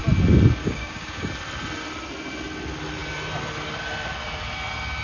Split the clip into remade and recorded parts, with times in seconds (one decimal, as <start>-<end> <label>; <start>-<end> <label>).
0.0-0.6 recorded; 0.6-1.3 remade; 1.3-5.0 recorded

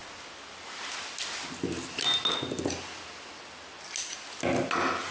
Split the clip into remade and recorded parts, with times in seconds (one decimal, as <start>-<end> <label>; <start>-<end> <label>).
0.0-5.1 recorded

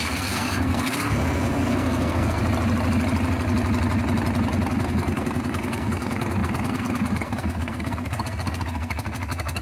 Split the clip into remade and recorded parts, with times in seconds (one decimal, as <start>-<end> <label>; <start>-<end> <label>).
0.0-2.4 remade; 2.4-4.8 recorded; 4.8-9.6 remade

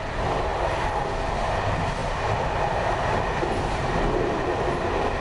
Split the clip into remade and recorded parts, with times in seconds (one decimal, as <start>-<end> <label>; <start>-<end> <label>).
0.0-5.2 recorded

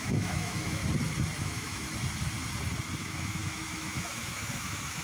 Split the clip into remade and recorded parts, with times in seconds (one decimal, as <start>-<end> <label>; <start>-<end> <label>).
0.0-0.8 remade; 0.8-1.4 recorded; 1.4-1.9 remade; 1.9-3.0 recorded; 3.0-5.0 remade

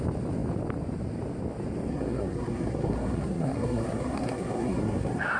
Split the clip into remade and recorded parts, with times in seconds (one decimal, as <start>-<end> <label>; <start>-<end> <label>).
0.0-1.9 recorded; 1.9-5.4 remade

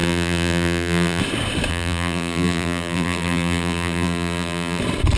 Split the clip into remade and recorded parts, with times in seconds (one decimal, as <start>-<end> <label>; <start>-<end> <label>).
0.0-1.2 remade; 1.2-1.7 recorded; 1.7-4.8 remade; 4.8-5.2 recorded